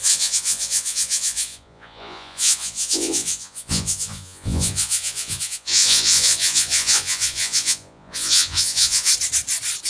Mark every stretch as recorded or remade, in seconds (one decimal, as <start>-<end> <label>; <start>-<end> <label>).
0.0-9.1 remade; 9.1-9.9 recorded